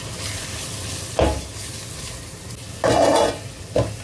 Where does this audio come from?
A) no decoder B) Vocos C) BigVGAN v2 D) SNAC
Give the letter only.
A